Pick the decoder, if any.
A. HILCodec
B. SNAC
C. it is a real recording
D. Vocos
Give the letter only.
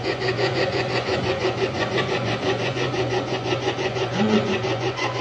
D